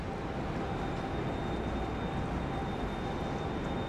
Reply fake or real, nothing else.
real